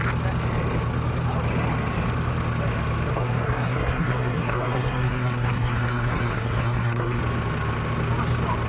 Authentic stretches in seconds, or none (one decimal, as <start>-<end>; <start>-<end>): 0.0-3.1; 7.2-8.7